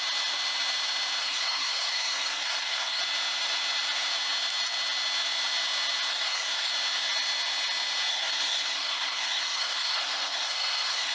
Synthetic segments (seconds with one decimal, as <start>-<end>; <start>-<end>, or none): 1.2-3.0; 6.1-6.7; 8.1-11.1